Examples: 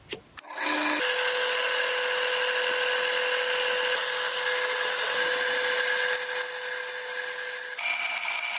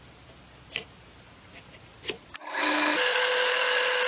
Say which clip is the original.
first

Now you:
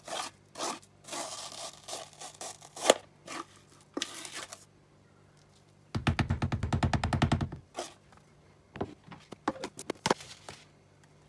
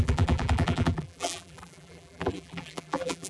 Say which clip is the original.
first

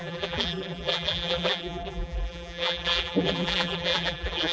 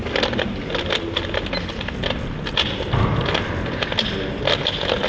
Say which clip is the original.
second